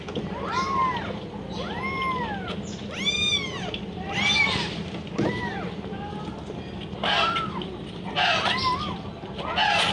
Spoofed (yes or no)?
no